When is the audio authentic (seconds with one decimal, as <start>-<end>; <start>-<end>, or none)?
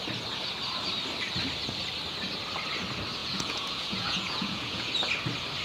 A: 0.0-3.2; 4.9-5.6